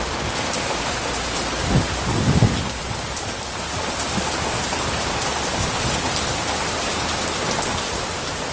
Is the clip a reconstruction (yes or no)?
yes